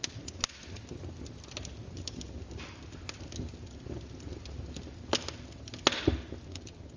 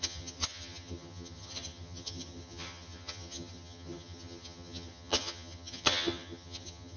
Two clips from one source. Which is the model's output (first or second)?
second